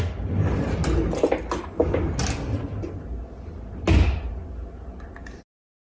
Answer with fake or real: real